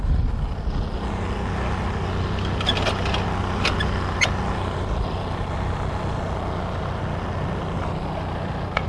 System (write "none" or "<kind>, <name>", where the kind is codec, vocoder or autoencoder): none